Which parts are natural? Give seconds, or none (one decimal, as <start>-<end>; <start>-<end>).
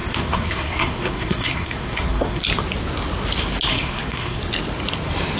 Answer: 2.4-3.7; 4.4-5.4